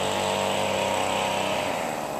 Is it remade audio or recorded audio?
recorded